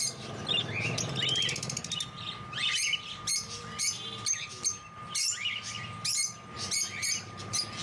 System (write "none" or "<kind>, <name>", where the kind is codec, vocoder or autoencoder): none